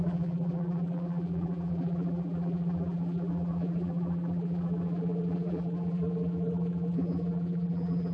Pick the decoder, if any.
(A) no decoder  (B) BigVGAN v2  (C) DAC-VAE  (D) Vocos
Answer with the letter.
B